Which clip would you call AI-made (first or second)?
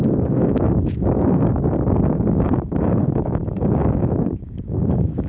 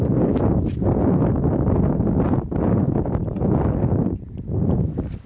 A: first